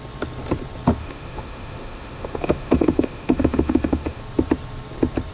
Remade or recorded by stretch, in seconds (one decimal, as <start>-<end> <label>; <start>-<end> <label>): 0.0-1.0 recorded; 1.0-4.2 remade; 4.2-5.3 recorded